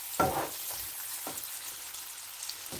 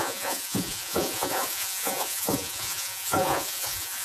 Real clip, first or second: first